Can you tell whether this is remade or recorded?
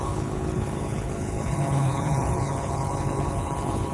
remade